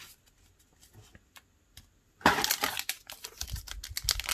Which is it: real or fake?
real